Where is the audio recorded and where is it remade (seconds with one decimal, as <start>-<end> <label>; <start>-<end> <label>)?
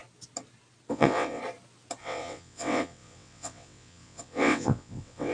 0.0-0.9 recorded; 0.9-1.4 remade; 1.4-2.0 recorded; 2.0-5.3 remade